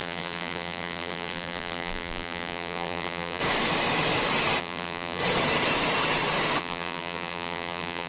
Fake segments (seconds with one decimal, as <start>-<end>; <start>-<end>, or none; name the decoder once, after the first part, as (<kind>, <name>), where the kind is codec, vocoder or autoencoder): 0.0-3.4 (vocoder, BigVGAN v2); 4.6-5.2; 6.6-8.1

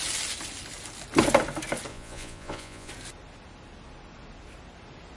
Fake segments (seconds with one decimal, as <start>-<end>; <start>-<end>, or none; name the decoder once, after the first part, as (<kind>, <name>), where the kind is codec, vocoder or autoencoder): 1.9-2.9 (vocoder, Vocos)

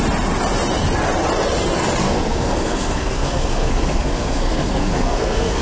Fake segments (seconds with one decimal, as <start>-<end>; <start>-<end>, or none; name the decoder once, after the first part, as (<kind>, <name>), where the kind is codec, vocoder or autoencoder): 2.0-5.6 (codec, SNAC)

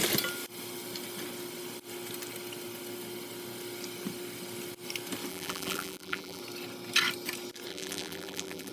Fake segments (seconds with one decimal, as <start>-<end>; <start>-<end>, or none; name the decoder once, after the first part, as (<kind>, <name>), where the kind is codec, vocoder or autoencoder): 5.3-6.4 (vocoder, BigVGAN v2); 7.7-8.7